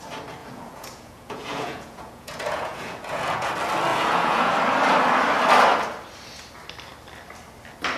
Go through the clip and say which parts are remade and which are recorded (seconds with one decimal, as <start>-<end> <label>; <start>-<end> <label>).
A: 0.0-0.4 recorded; 0.4-3.5 remade; 3.5-3.9 recorded; 3.9-4.5 remade; 4.5-8.0 recorded